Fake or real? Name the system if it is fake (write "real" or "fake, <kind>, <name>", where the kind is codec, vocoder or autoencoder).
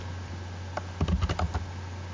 real